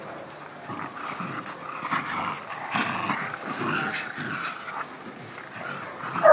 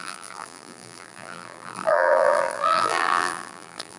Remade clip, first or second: second